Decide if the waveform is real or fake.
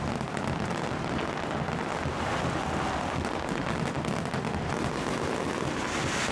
real